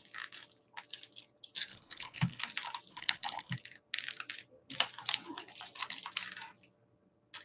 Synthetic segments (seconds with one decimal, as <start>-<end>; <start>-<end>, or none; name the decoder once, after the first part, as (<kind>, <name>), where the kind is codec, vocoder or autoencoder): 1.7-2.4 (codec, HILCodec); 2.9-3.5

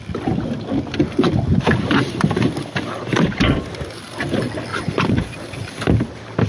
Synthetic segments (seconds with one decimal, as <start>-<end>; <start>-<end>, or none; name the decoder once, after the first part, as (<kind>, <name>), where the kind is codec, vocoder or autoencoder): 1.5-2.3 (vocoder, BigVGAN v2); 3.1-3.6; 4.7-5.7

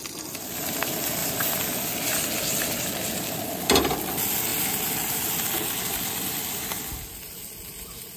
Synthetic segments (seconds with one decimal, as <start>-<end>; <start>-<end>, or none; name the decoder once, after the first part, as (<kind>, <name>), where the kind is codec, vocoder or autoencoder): none

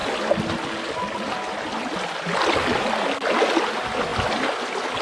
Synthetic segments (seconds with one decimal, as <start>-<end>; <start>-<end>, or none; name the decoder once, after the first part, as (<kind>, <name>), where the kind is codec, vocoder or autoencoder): none

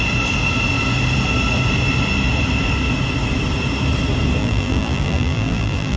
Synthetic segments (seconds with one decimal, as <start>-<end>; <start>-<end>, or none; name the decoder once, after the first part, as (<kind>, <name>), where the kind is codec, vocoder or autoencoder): 4.4-6.0 (vocoder, BigVGAN v2)

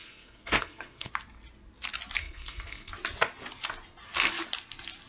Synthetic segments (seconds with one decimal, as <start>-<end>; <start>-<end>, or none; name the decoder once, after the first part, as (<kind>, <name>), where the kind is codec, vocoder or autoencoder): 0.0-1.1 (codec, SNAC); 2.2-2.9

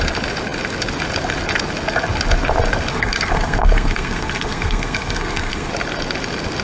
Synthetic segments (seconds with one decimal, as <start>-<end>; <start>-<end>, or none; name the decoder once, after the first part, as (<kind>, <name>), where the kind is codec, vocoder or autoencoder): 2.9-5.7 (codec, SNAC)